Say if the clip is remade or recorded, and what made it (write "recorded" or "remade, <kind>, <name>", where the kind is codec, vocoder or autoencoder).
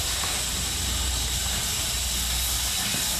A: recorded